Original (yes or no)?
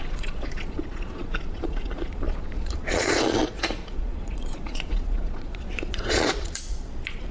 no